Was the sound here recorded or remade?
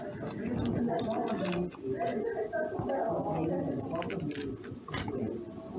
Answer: recorded